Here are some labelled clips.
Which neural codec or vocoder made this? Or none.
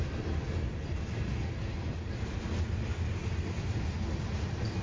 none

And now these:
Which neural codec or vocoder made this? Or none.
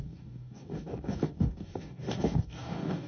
codec, DAC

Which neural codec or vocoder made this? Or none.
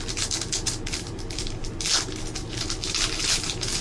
none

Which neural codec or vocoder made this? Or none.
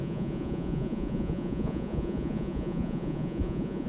vocoder, Vocos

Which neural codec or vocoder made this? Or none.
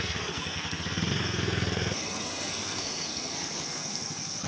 codec, SNAC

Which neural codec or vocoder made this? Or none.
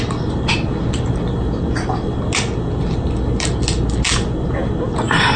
none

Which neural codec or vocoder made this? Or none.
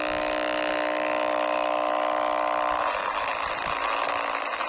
none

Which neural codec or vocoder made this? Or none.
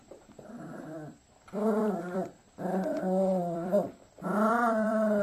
vocoder, BigVGAN v2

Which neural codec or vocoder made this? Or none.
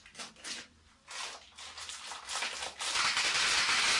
none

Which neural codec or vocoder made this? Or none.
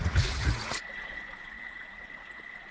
vocoder, Vocos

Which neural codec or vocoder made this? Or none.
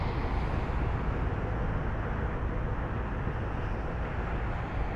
none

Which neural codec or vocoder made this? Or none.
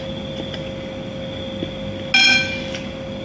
none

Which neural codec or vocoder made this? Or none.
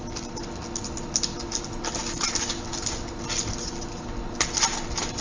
none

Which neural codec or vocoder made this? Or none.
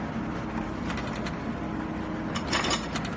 none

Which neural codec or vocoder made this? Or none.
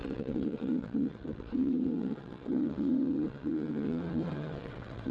vocoder, WaveNeXt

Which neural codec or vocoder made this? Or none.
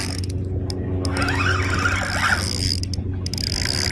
none